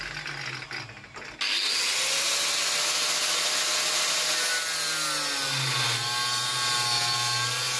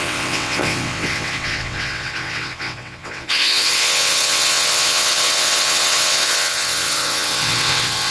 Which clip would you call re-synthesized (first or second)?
second